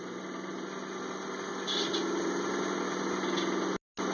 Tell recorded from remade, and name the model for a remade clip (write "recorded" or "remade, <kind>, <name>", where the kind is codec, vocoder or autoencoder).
recorded